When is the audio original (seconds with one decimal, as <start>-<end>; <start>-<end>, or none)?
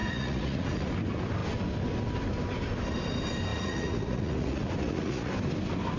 0.9-3.5; 5.3-6.0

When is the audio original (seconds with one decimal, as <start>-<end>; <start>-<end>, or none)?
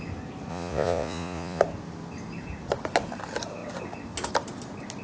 0.0-0.5; 1.6-5.0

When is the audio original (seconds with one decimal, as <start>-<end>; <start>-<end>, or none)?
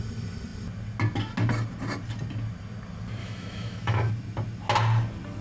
0.0-3.2; 4.1-5.4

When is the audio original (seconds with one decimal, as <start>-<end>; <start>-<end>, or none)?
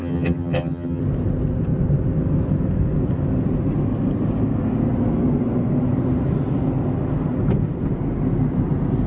1.0-9.1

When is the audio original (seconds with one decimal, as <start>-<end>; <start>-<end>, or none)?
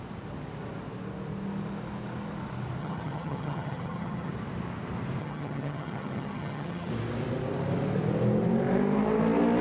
0.0-2.8; 4.3-5.2; 6.9-9.6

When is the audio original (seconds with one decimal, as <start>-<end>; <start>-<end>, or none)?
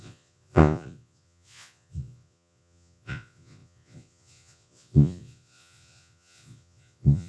none